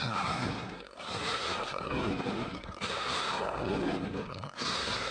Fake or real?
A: fake